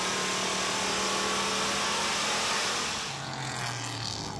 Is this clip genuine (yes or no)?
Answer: yes